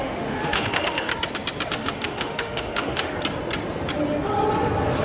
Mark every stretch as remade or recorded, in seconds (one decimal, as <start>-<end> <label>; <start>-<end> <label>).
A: 0.0-1.1 remade; 1.1-1.7 recorded; 1.7-3.1 remade; 3.1-5.0 recorded